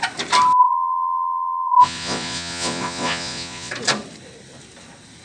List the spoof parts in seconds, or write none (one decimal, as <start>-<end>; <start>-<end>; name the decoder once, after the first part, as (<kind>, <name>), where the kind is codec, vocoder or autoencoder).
0.6-3.7 (vocoder, Vocos)